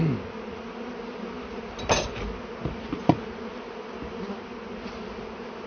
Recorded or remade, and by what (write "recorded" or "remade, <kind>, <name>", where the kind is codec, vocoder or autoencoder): recorded